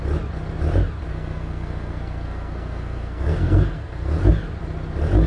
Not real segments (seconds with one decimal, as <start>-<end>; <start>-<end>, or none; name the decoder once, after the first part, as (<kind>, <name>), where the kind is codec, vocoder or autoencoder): 1.1-4.3 (codec, SNAC)